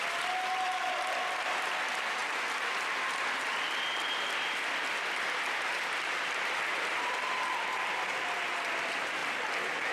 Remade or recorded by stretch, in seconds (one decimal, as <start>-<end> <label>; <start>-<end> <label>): 0.0-9.9 recorded